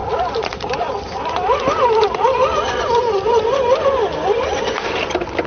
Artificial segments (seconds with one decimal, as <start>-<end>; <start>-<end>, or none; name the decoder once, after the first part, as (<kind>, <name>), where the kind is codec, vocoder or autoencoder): 0.0-0.7 (vocoder, BigVGAN v2)